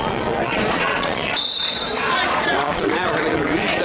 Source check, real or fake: fake